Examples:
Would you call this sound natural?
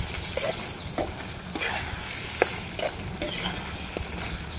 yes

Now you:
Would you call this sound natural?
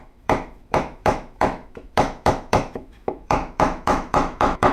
no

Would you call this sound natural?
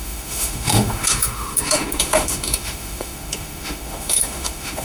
no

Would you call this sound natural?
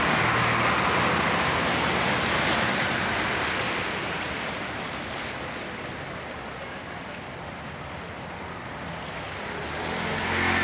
yes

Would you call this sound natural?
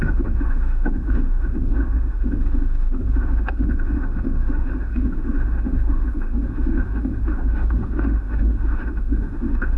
no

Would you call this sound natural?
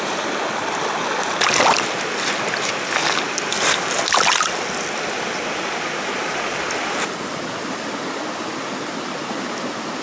yes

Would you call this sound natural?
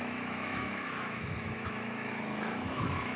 no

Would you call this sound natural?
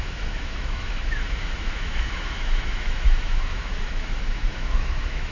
no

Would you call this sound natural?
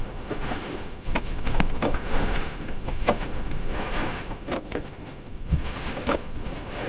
no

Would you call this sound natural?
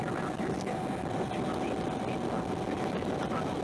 yes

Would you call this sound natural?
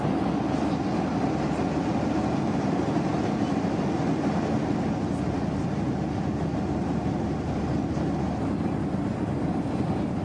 yes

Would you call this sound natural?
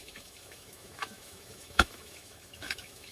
no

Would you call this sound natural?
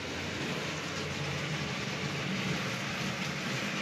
yes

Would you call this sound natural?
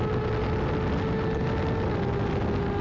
yes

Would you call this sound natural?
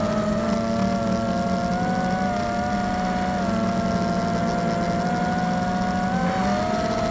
yes